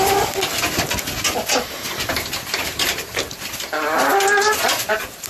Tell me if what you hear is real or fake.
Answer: real